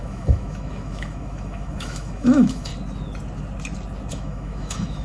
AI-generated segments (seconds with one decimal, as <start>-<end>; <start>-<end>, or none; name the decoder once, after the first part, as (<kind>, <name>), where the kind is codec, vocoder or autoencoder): 0.0-2.7 (autoencoder, DAC-VAE); 4.1-5.0